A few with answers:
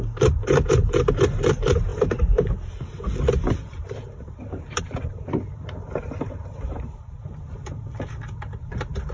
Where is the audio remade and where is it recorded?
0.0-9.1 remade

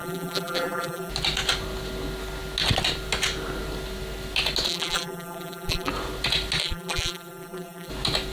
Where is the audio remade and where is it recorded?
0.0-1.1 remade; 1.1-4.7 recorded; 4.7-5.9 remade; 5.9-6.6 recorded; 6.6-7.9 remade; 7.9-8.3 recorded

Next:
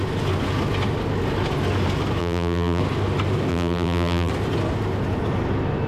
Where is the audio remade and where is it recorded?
0.0-2.2 recorded; 2.2-2.8 remade; 2.8-3.5 recorded; 3.5-4.3 remade; 4.3-5.9 recorded

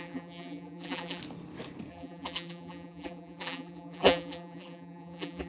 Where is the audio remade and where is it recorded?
0.0-1.2 remade; 1.2-1.9 recorded; 1.9-5.5 remade

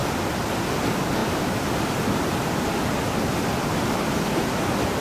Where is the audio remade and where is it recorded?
0.0-5.0 recorded

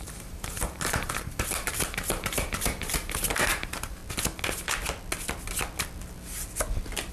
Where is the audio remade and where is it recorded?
0.0-4.0 remade; 4.0-7.1 recorded

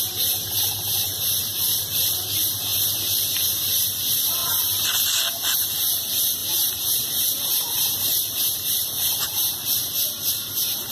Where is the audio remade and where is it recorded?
0.0-2.7 remade; 2.7-3.3 recorded; 3.3-4.4 remade; 4.4-5.5 recorded; 5.5-10.9 remade